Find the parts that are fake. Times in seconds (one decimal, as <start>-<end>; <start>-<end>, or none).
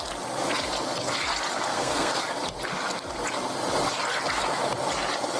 1.7-2.2